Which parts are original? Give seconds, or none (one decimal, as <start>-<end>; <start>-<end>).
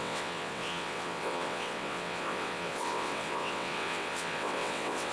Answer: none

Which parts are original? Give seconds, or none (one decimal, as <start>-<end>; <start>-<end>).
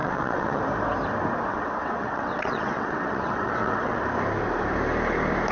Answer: 0.6-1.5; 4.0-5.5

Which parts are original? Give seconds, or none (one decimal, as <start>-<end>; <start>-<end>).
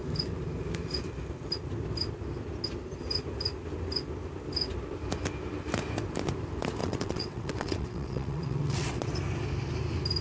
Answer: 0.0-6.8; 9.1-10.2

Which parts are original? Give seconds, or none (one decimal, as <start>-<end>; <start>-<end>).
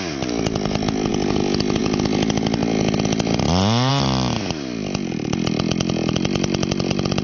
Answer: 0.0-7.2